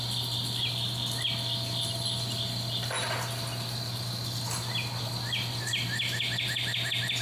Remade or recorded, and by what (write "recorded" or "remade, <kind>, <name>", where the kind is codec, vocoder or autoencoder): recorded